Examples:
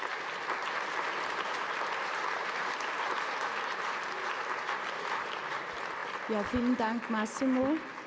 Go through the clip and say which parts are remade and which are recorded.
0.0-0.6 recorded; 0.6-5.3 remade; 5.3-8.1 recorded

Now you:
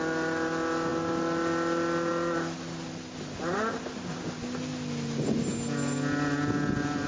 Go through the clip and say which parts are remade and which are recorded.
0.0-7.1 recorded

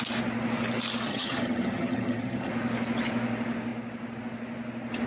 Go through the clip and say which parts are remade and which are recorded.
0.0-1.1 recorded; 1.1-2.5 remade; 2.5-5.1 recorded